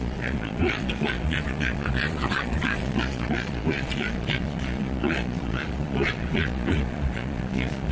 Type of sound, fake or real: fake